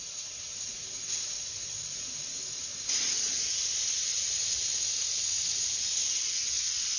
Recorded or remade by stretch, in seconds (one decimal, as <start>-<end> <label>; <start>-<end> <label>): 0.0-2.7 recorded; 2.7-3.4 remade; 3.4-7.0 recorded